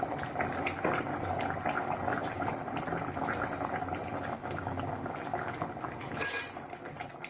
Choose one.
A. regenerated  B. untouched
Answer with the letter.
B